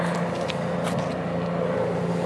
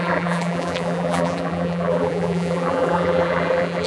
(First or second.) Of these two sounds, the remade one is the second